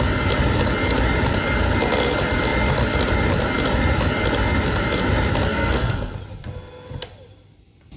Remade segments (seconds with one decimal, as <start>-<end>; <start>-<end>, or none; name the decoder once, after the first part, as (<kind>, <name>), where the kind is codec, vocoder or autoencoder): 5.5-6.1 (codec, SNAC)

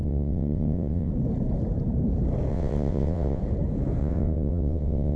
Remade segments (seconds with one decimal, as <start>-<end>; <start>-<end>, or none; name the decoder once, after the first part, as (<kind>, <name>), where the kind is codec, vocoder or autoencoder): 0.0-1.1 (vocoder, WaveNeXt); 2.5-3.4; 4.0-5.2

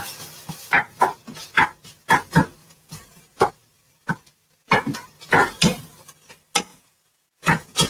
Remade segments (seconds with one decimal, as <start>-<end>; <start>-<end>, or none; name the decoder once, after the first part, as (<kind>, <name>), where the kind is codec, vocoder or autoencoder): 2.6-3.5 (vocoder, Vocos); 6.7-7.9